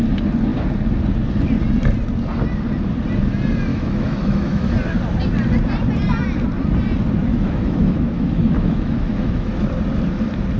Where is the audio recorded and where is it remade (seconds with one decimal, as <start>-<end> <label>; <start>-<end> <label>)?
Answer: 0.0-3.7 recorded; 3.7-4.7 remade; 4.7-7.3 recorded; 7.3-9.7 remade; 9.7-10.6 recorded

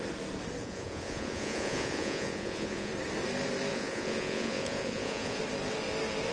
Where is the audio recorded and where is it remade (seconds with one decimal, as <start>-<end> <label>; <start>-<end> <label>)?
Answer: 0.0-0.6 recorded; 0.6-2.9 remade; 2.9-3.7 recorded; 3.7-5.4 remade; 5.4-6.3 recorded

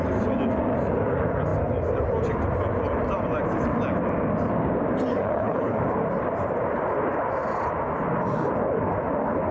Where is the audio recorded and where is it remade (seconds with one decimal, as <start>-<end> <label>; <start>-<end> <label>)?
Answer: 0.0-5.1 recorded; 5.1-5.8 remade; 5.8-9.5 recorded

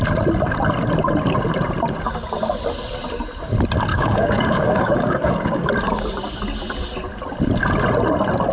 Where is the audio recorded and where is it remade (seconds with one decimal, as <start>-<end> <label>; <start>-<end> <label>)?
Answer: 0.0-3.9 recorded; 3.9-5.7 remade; 5.7-8.5 recorded

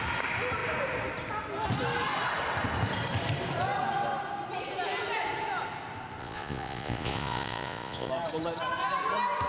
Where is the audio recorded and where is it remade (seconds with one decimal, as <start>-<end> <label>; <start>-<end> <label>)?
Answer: 0.0-6.2 recorded; 6.2-8.1 remade; 8.1-9.5 recorded

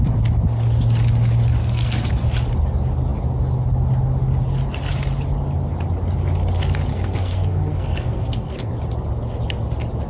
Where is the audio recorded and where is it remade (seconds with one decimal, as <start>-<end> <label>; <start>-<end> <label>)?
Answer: 0.0-1.6 recorded; 1.6-2.1 remade; 2.1-6.9 recorded; 6.9-8.7 remade; 8.7-10.1 recorded

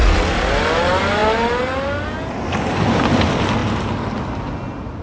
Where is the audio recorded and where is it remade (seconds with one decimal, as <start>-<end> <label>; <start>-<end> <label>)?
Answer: 0.0-5.0 recorded